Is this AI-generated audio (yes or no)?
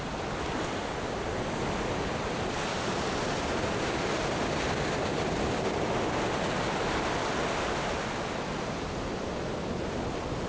no